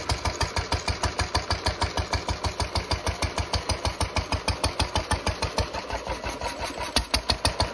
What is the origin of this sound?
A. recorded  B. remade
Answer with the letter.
A